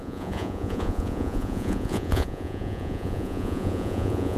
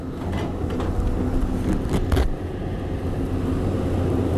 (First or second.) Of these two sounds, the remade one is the first